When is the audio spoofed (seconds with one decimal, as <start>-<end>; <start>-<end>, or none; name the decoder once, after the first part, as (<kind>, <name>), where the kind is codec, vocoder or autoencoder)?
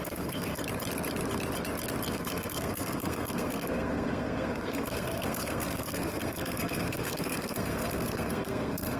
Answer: 0.0-0.6 (codec, SNAC); 2.1-9.0